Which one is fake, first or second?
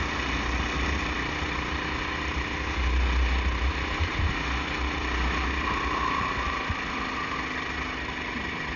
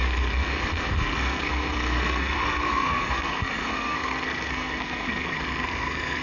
second